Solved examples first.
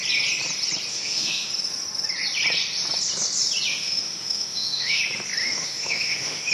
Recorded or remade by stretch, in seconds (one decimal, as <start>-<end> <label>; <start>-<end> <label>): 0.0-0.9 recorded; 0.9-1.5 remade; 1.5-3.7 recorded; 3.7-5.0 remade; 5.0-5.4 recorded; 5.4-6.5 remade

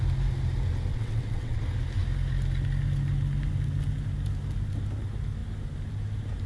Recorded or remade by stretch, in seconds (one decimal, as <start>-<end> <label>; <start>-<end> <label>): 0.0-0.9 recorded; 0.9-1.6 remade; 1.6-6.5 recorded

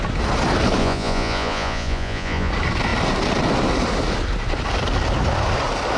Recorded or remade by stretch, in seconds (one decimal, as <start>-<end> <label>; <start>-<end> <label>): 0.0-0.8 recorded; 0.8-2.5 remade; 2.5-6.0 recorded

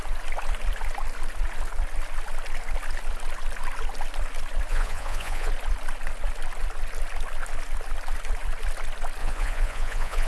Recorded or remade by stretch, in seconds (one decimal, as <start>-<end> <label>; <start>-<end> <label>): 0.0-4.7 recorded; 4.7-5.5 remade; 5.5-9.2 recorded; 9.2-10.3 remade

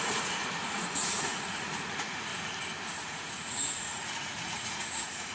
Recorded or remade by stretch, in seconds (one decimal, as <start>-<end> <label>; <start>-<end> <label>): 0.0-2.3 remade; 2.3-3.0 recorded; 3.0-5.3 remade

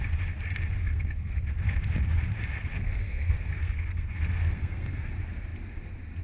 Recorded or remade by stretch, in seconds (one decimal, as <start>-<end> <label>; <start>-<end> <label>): 0.0-0.8 recorded; 0.8-1.4 remade; 1.4-2.7 recorded; 2.7-5.1 remade; 5.1-6.2 recorded